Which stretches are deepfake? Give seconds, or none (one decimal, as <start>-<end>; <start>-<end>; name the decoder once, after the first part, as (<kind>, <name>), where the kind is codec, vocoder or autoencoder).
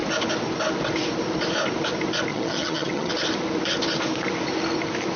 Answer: 2.3-3.1 (vocoder, HiFi-GAN)